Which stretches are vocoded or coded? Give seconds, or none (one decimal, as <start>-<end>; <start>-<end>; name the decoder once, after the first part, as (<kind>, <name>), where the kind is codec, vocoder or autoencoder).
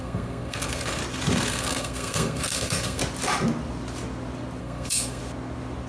0.0-1.0 (codec, SNAC); 1.5-3.0; 4.6-5.2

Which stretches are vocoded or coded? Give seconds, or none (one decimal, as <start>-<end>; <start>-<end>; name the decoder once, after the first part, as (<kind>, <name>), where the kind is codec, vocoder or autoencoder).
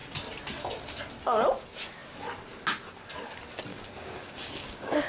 3.7-5.1 (codec, DAC)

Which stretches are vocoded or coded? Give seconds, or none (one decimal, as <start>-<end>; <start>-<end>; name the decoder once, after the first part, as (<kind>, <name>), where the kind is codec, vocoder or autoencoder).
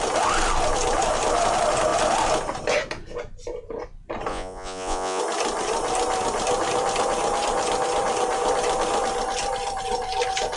4.3-5.2 (vocoder, Vocos)